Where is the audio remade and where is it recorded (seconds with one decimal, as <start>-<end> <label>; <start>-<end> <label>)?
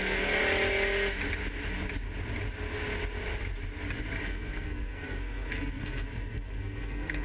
0.0-0.4 remade; 0.4-4.2 recorded; 4.2-7.2 remade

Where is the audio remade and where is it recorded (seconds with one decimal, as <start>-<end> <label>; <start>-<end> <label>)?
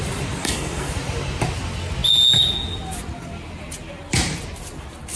0.0-0.4 recorded; 0.4-0.9 remade; 0.9-5.2 recorded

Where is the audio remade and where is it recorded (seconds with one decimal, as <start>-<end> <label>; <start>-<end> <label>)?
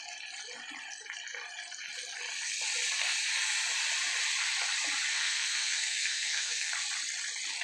0.0-5.1 recorded; 5.1-6.7 remade; 6.7-7.6 recorded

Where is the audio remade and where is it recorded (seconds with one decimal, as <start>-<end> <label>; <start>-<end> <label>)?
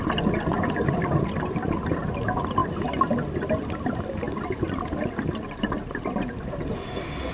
0.0-7.3 recorded